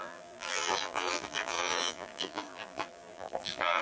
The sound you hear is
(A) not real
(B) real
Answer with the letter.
A